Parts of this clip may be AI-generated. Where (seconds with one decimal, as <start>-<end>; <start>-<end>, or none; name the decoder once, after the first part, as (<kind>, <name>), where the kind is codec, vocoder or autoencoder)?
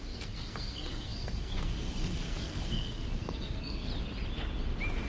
0.0-3.9 (codec, SNAC)